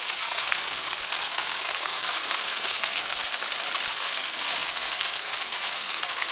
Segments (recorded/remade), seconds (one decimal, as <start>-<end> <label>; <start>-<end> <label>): 0.0-3.2 remade; 3.2-3.9 recorded; 3.9-6.3 remade